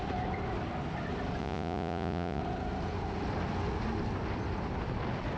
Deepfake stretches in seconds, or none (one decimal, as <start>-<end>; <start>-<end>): 1.4-2.4

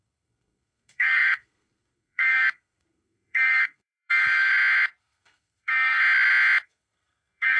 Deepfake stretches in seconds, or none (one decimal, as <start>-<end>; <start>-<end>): 0.0-4.5; 5.0-6.0; 6.6-7.6

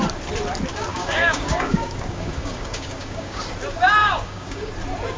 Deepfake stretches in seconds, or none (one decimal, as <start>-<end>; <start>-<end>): 0.9-3.4; 4.0-4.7